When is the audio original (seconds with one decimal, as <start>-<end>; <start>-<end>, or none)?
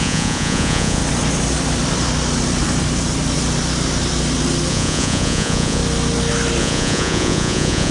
1.0-4.7; 5.8-6.6